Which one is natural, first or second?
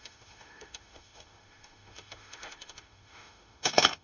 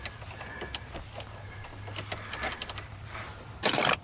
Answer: second